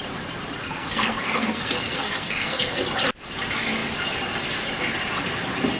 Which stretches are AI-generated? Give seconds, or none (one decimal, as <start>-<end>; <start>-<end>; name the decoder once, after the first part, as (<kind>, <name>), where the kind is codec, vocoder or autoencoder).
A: 0.6-2.8 (codec, SNAC)